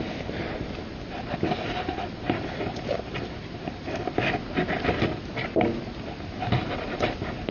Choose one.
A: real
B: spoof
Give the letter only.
A